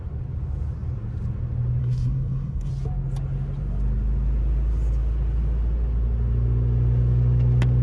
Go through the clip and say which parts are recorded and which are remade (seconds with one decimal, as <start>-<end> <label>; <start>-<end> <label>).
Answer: 0.0-1.8 recorded; 1.8-2.7 remade; 2.7-7.8 recorded